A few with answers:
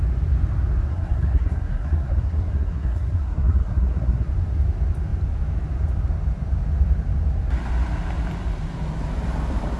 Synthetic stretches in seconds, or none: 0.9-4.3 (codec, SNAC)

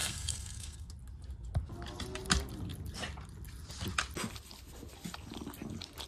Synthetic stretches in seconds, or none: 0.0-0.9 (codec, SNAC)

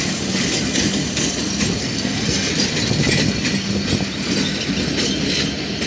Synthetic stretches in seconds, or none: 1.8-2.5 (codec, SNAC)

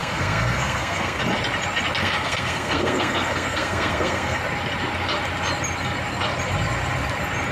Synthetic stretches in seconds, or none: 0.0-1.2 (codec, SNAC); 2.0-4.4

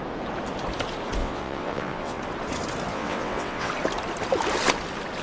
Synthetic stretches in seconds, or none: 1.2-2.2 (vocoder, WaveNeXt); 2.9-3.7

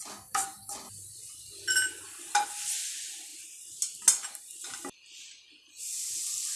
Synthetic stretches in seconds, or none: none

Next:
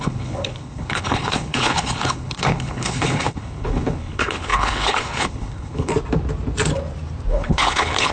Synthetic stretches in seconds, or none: 0.0-5.9 (codec, HILCodec); 7.3-8.1